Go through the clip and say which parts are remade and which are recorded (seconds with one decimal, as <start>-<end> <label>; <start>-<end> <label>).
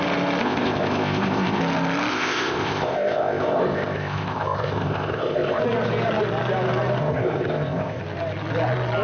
0.0-0.4 recorded; 0.4-1.6 remade; 1.6-2.1 recorded; 2.1-5.6 remade; 5.6-7.0 recorded; 7.0-8.0 remade; 8.0-9.0 recorded